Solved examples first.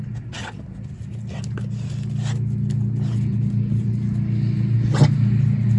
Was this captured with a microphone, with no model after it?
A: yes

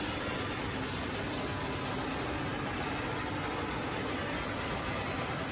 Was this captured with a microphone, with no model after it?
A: yes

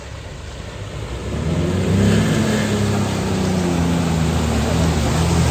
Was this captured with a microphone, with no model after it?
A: yes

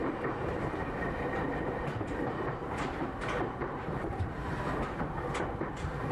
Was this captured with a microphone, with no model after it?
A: no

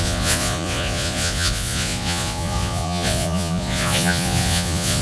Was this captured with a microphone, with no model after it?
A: no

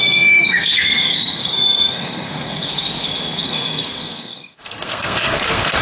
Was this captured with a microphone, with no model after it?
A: no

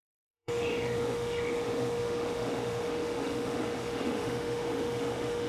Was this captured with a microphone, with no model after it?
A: no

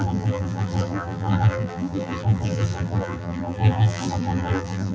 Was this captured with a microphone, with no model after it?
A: no